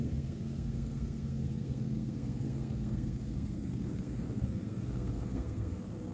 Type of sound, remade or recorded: remade